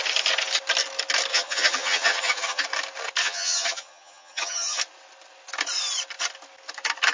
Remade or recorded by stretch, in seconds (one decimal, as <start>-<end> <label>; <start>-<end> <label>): 0.0-1.3 recorded; 1.3-2.6 remade; 2.6-3.2 recorded; 3.2-4.8 remade; 4.8-7.1 recorded